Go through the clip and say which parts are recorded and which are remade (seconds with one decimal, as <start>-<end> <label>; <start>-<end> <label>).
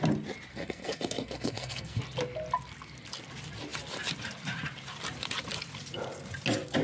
0.0-0.5 recorded; 0.5-2.0 remade; 2.0-6.8 recorded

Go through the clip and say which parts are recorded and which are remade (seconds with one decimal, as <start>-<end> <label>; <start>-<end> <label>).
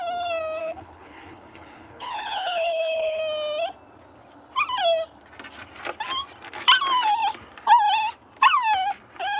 0.0-0.6 recorded; 0.6-3.2 remade; 3.2-9.4 recorded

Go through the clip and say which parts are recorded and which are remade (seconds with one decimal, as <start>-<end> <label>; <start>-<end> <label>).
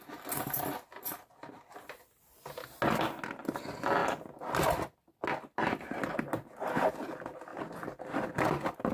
0.0-8.9 recorded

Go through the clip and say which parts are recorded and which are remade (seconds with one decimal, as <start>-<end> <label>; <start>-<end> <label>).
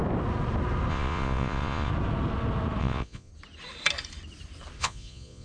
0.0-0.9 recorded; 0.9-1.9 remade; 1.9-2.8 recorded; 2.8-3.3 remade; 3.3-4.8 recorded; 4.8-5.4 remade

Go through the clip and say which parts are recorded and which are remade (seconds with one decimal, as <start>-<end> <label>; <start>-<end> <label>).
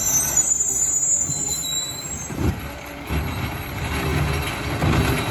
0.0-1.2 recorded; 1.2-3.1 remade; 3.1-5.3 recorded